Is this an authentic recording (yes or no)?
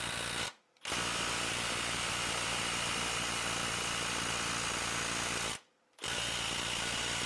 yes